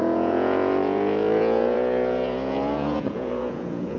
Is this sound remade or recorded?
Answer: remade